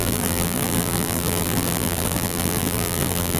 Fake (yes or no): yes